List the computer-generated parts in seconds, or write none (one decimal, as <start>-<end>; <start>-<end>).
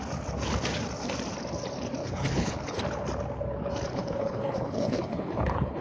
2.0-2.8; 3.9-5.8